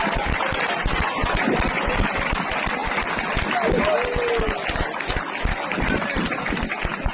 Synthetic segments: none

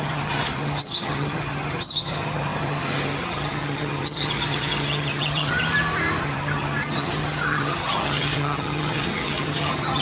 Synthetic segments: 0.0-5.6 (vocoder, HiFi-GAN); 6.2-10.0

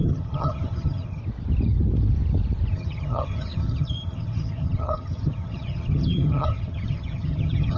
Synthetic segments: 0.0-1.2 (vocoder, HiFi-GAN); 2.7-7.8

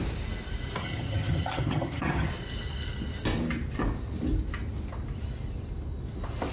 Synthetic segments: 0.8-2.3 (vocoder, HiFi-GAN)